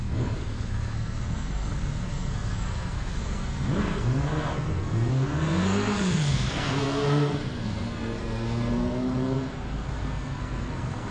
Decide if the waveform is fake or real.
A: fake